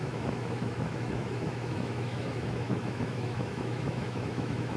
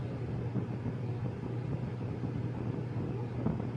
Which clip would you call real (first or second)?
second